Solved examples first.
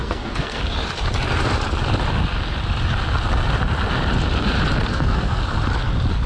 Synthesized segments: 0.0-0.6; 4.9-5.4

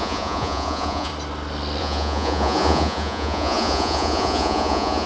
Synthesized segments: 0.0-1.1; 1.8-5.1

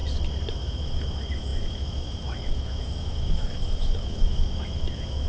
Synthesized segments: 0.5-5.3

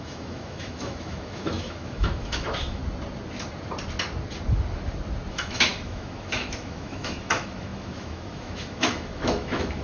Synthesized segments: 0.0-2.8; 5.3-9.8